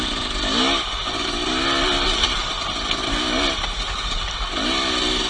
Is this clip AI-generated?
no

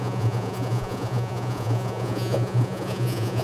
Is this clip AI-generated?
yes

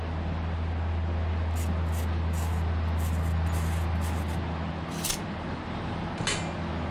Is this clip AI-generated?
no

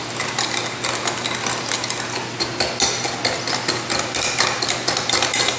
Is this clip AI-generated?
no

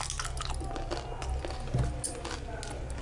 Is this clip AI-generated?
no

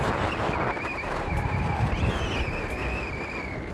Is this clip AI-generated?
no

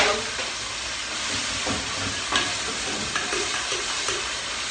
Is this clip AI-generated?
no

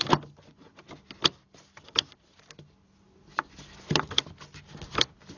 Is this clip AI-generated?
no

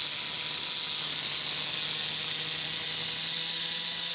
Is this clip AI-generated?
no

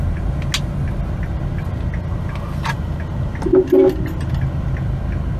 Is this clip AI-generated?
no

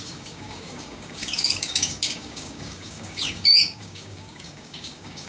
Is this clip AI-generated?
yes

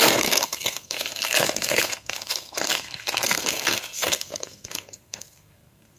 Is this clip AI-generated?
yes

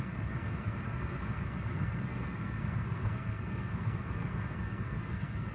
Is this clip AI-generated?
yes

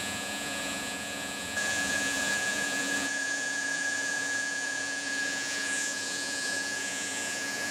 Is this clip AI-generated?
yes